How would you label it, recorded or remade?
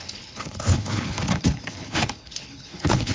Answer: remade